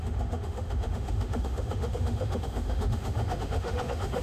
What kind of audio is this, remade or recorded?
remade